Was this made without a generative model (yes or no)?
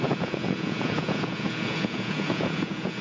no